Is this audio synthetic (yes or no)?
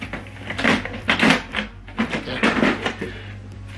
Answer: no